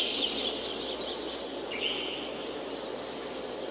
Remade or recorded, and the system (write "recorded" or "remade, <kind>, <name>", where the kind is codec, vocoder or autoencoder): recorded